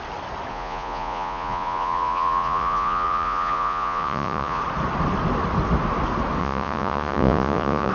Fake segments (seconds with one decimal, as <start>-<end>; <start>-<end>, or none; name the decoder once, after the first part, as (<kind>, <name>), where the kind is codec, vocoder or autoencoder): 0.5-4.6 (vocoder, Vocos); 6.4-7.9